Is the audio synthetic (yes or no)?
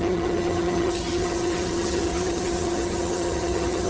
yes